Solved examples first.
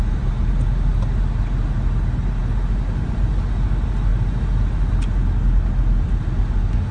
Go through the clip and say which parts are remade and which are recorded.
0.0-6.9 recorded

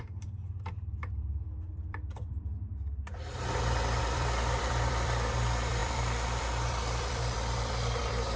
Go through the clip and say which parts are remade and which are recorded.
0.0-2.7 remade; 2.7-4.0 recorded; 4.0-8.4 remade

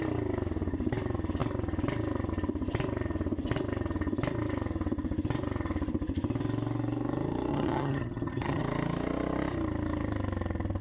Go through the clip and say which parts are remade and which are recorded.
0.0-7.5 recorded; 7.5-8.6 remade; 8.6-10.8 recorded

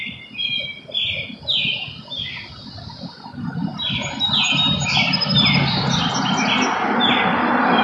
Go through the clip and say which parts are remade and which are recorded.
0.0-7.8 recorded

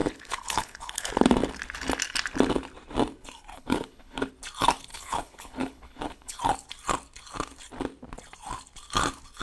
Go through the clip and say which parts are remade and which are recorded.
0.0-1.1 remade; 1.1-3.5 recorded; 3.5-4.3 remade; 4.3-4.9 recorded; 4.9-6.4 remade; 6.4-9.4 recorded

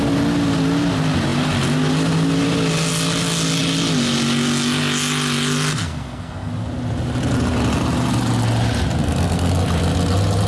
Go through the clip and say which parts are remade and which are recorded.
0.0-5.7 recorded; 5.7-6.5 remade; 6.5-9.0 recorded; 9.0-9.5 remade; 9.5-10.5 recorded

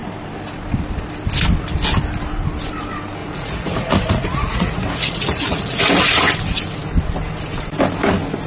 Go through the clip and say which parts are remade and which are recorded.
0.0-3.2 recorded; 3.2-5.8 remade; 5.8-8.5 recorded

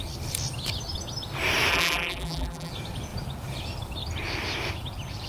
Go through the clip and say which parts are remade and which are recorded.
0.0-1.7 recorded; 1.7-2.7 remade; 2.7-5.3 recorded